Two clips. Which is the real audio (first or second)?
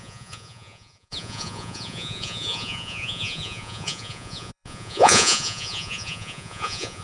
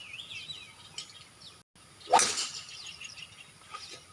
second